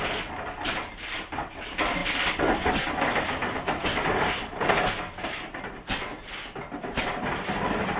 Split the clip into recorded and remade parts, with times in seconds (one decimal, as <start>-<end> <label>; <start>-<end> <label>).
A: 0.0-8.0 recorded